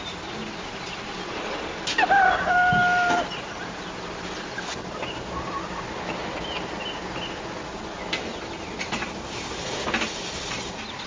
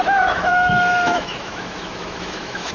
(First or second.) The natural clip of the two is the first